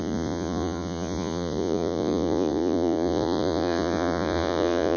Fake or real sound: fake